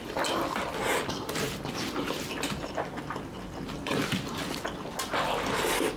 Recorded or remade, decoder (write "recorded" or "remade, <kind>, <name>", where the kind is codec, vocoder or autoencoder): remade, vocoder, BigVGAN v2